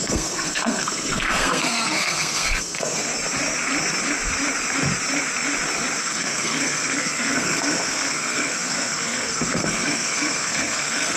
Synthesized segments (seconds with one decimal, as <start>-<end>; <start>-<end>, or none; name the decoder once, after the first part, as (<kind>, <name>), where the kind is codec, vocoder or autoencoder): 0.0-3.1 (codec, SNAC); 6.0-11.2